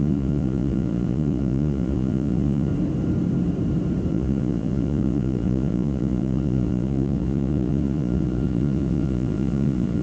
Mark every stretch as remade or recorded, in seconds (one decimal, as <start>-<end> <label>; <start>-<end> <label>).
0.0-2.7 remade; 2.7-4.1 recorded; 4.1-10.0 remade